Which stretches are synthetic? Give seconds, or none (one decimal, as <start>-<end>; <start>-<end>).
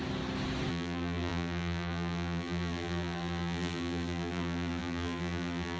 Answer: 0.7-5.8